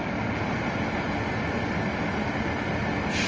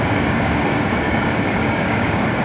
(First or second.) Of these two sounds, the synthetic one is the second